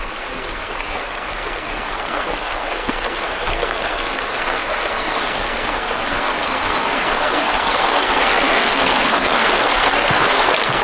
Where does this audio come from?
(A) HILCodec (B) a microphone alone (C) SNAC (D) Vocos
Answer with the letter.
C